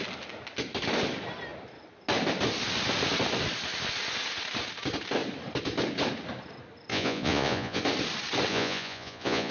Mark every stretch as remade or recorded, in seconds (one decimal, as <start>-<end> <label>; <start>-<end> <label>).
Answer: 0.0-6.9 recorded; 6.9-7.8 remade; 7.8-8.5 recorded; 8.5-9.5 remade